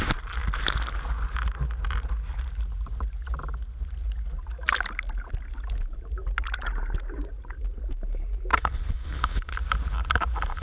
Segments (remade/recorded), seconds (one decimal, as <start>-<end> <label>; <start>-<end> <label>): 0.0-8.5 recorded; 8.5-9.5 remade; 9.5-10.6 recorded